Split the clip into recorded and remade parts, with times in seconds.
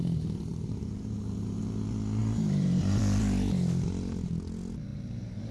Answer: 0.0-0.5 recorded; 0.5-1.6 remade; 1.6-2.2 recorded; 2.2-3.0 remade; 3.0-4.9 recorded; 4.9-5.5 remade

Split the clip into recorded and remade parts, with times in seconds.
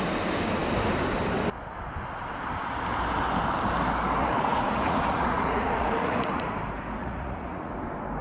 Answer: 0.0-4.2 recorded; 4.2-6.5 remade; 6.5-7.0 recorded; 7.0-7.7 remade; 7.7-8.2 recorded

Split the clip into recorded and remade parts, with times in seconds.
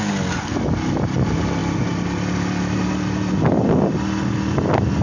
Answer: 0.0-5.0 recorded